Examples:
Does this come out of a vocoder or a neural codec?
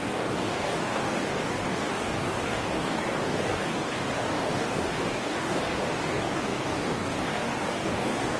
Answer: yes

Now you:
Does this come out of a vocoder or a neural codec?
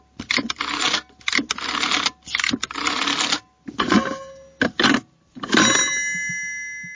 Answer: no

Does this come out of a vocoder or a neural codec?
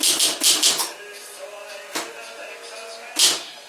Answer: no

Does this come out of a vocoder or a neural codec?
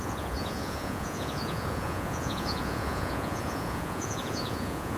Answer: yes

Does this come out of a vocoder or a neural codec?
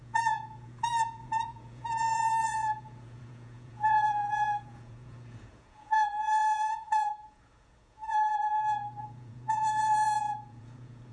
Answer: yes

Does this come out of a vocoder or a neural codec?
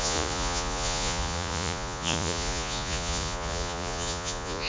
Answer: yes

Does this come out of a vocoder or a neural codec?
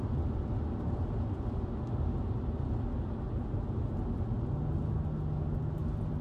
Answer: no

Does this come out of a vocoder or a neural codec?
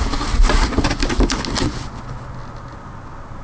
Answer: no